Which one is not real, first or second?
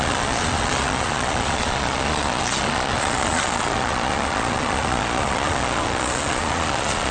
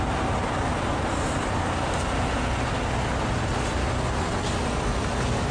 first